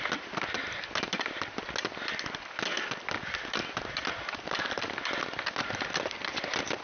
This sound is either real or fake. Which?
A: real